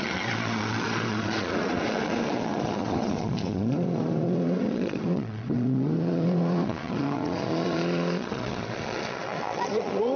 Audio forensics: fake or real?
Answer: fake